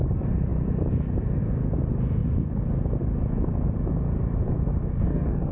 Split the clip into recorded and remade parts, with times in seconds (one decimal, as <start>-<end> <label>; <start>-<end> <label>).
0.0-4.9 recorded; 4.9-5.5 remade